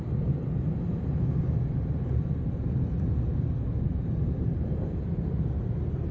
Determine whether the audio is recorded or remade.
recorded